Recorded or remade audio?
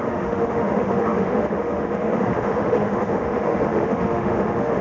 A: remade